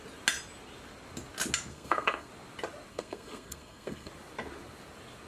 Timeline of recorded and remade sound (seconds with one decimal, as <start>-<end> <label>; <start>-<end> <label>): 0.0-1.7 recorded; 1.7-2.3 remade; 2.3-2.9 recorded; 2.9-4.1 remade; 4.1-5.3 recorded